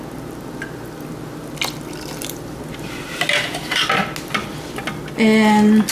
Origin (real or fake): real